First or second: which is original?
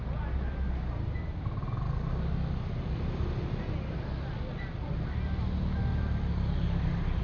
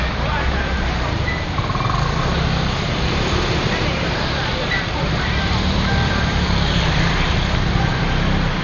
first